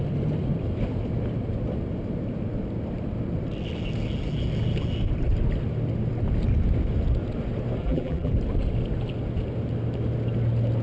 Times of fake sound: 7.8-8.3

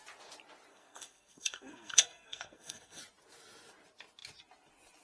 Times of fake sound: 0.7-3.0